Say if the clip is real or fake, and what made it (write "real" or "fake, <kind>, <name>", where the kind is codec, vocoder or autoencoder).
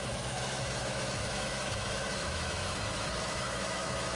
fake, autoencoder, DAC-VAE